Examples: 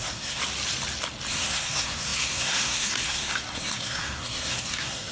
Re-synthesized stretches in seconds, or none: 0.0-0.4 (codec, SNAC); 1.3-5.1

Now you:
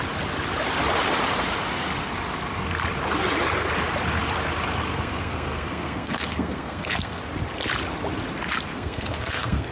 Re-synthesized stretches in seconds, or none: 4.9-7.2 (codec, SNAC); 8.7-9.7

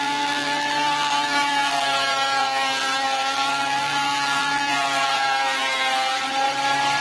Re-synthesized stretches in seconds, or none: 0.0-5.6 (vocoder, BigVGAN v2)

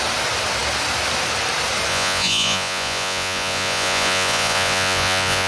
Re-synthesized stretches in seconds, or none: 1.9-5.5 (vocoder, Vocos)

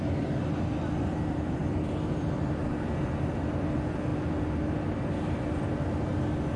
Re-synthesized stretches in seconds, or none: none